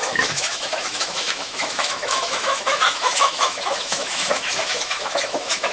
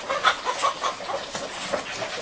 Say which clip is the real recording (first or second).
second